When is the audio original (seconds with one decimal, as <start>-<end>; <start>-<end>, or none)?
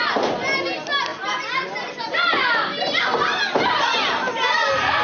0.0-5.0